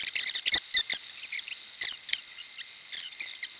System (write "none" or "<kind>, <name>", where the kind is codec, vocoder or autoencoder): none